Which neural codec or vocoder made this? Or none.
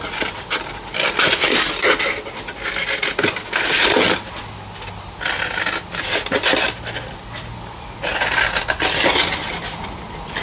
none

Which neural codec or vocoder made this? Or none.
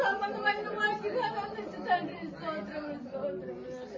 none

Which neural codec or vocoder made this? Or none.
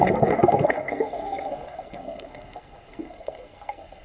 codec, SNAC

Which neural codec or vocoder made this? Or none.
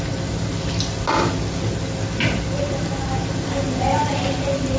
none